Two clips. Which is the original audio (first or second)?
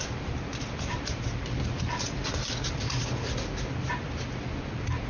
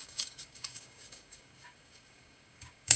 first